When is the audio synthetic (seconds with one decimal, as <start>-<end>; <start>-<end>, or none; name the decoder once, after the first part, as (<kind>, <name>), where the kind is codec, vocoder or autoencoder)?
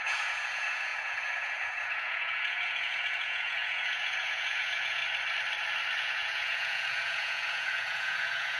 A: 0.0-5.0 (vocoder, Vocos); 6.0-8.6